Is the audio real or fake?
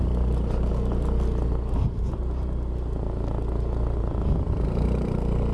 real